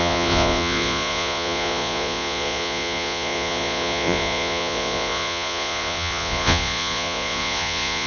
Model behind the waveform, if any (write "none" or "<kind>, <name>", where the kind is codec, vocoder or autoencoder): vocoder, Vocos